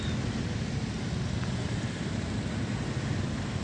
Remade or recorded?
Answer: recorded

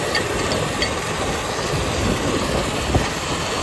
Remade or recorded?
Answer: recorded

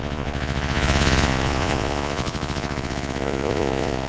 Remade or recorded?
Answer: remade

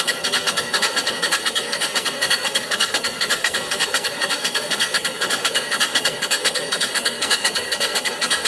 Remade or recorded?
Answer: remade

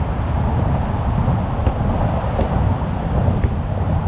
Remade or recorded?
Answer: recorded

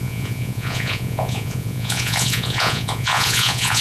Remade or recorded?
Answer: remade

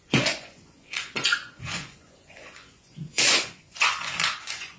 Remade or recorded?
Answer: remade